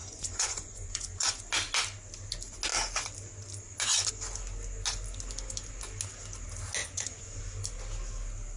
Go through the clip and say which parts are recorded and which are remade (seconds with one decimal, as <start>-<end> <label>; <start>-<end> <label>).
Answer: 0.0-1.4 remade; 1.4-6.8 recorded; 6.8-7.4 remade; 7.4-8.6 recorded